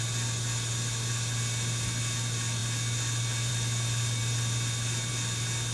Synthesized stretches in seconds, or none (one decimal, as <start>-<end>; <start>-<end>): none